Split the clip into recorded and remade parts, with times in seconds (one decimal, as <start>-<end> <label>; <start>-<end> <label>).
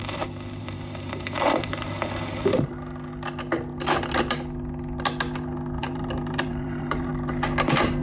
0.0-0.6 recorded; 0.6-1.7 remade; 1.7-5.8 recorded; 5.8-7.1 remade; 7.1-8.0 recorded